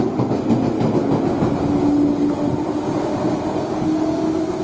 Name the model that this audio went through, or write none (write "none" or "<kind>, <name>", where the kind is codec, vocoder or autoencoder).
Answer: none